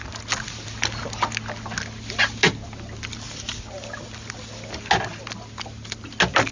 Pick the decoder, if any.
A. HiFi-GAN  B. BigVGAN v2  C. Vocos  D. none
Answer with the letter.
D